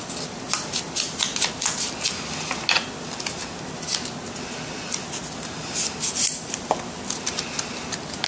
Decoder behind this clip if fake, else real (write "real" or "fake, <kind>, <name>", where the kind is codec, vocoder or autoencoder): real